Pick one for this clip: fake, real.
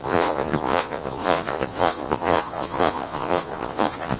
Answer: fake